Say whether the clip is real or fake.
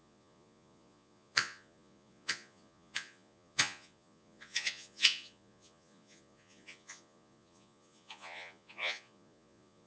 fake